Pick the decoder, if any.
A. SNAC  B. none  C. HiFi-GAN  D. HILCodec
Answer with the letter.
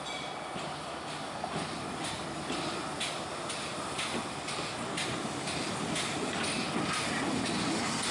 B